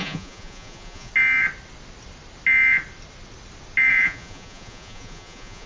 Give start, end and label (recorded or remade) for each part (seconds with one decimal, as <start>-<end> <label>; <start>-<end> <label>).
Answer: 0.0-1.1 remade; 1.1-3.9 recorded; 3.9-5.7 remade